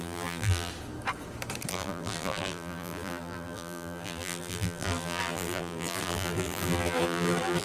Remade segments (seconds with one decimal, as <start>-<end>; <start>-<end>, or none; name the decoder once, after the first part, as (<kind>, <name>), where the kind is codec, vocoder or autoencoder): 0.0-0.7 (vocoder, BigVGAN v2); 1.7-7.6